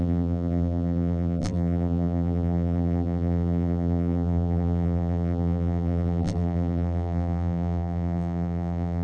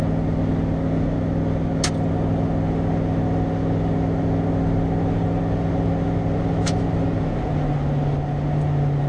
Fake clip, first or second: first